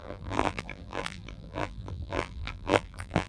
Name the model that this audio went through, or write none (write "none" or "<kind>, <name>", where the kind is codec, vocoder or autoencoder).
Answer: vocoder, BigVGAN v2